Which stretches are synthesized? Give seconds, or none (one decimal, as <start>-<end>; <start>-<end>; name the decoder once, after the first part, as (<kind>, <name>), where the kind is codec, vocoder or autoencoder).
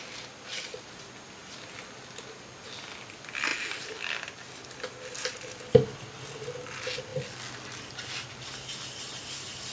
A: none